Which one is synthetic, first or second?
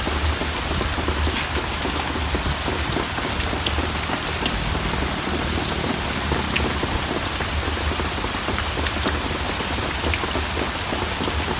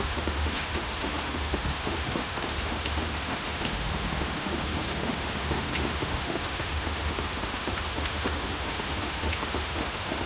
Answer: second